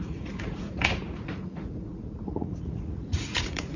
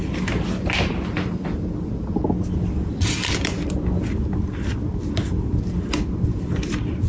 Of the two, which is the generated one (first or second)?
first